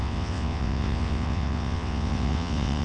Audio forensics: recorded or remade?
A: remade